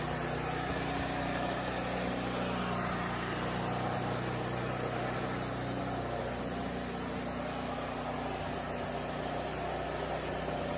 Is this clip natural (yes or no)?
yes